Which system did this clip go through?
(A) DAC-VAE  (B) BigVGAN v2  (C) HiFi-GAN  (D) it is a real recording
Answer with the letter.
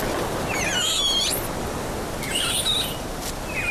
D